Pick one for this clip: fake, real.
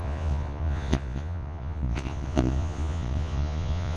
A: fake